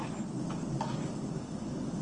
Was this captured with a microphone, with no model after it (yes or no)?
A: yes